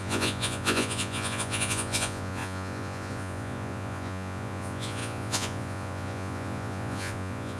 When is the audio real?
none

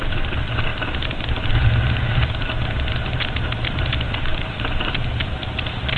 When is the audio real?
0.0-6.0

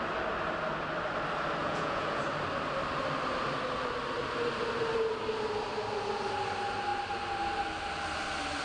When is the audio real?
0.0-1.6; 2.2-8.6

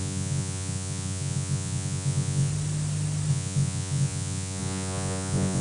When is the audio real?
2.5-3.3

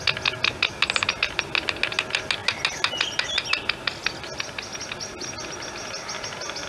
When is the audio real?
0.0-6.7

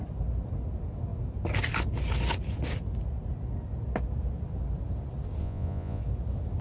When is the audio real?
0.0-5.4; 6.0-6.6

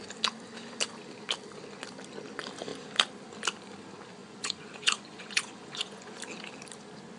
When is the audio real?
0.0-4.2; 6.2-7.2

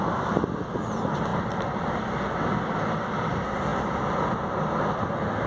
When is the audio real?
0.0-5.5